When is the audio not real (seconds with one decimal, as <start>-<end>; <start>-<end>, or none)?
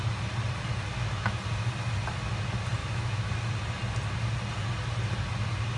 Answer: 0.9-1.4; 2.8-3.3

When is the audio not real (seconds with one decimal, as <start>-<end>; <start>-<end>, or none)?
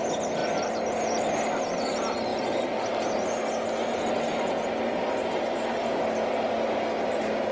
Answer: none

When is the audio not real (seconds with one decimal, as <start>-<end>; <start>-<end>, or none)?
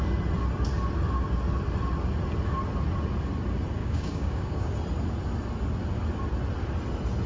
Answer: 3.8-4.7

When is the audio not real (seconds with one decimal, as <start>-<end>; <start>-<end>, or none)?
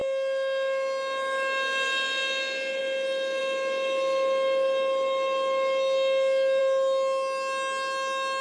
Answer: none